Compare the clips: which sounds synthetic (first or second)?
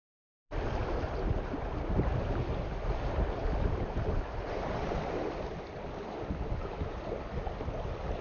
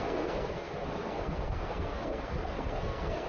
second